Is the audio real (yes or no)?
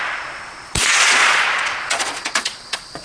no